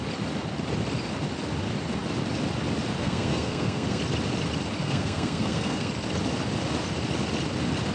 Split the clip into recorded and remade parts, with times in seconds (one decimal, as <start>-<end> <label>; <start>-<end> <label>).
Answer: 0.0-3.0 recorded; 3.0-4.0 remade; 4.0-4.8 recorded; 4.8-5.9 remade; 5.9-7.9 recorded